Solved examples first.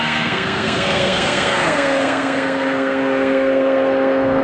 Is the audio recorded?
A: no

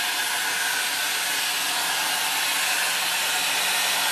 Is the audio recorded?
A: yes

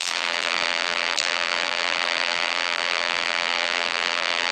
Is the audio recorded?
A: no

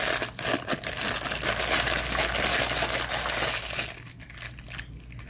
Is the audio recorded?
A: yes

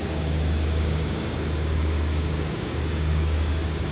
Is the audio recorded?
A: no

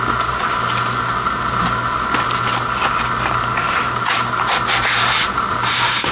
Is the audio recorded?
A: yes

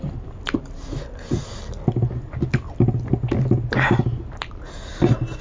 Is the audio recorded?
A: yes